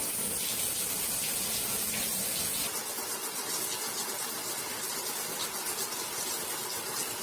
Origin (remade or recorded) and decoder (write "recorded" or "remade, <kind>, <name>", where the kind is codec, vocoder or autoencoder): recorded